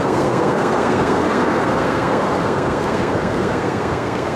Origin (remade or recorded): remade